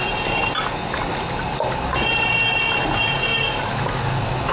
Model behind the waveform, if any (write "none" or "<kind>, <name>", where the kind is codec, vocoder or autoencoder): none